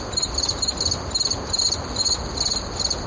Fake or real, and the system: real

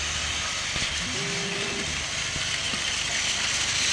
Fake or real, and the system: real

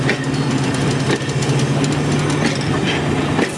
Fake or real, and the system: real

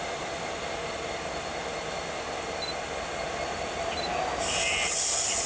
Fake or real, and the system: fake, vocoder, BigVGAN v2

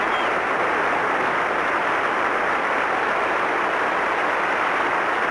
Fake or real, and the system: real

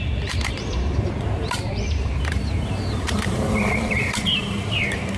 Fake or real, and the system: fake, vocoder, BigVGAN v2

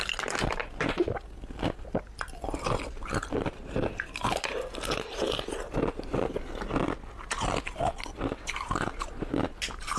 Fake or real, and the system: real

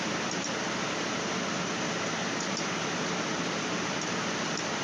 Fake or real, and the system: fake, vocoder, BigVGAN v2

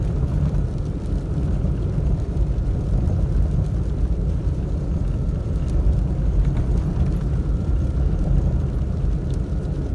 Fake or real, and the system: fake, vocoder, BigVGAN v2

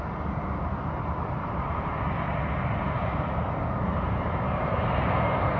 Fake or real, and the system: fake, vocoder, BigVGAN v2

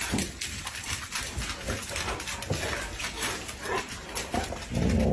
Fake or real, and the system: real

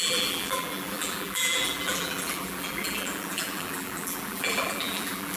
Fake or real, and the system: fake, vocoder, BigVGAN v2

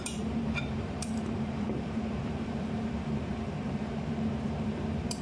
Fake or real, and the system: fake, vocoder, BigVGAN v2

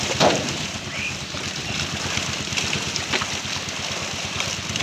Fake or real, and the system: real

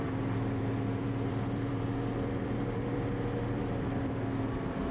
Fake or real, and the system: fake, vocoder, BigVGAN v2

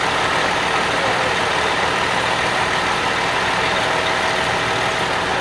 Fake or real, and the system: real